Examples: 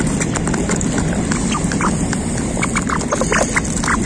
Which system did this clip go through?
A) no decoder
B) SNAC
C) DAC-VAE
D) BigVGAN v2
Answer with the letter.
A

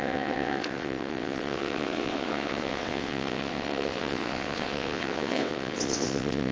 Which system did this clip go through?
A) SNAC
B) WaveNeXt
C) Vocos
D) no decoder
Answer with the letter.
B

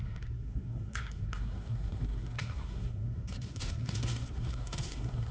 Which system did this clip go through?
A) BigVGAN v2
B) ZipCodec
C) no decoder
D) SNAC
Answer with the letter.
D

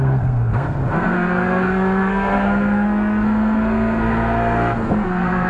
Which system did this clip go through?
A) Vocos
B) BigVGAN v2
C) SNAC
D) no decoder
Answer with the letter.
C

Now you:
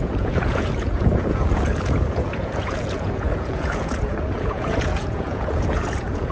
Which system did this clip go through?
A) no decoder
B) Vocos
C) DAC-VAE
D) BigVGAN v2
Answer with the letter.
B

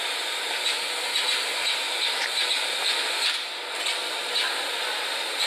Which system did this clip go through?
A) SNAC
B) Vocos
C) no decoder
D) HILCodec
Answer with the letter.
C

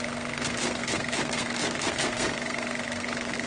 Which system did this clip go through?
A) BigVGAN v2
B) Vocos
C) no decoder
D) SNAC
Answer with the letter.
D